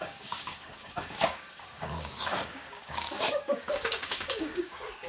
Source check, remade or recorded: remade